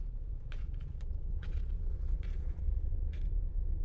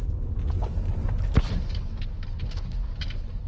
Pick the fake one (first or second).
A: first